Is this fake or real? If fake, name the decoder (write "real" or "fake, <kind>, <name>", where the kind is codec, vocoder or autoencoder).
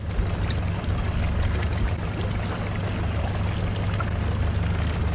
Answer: real